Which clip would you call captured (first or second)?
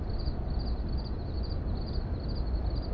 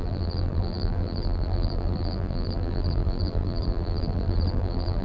first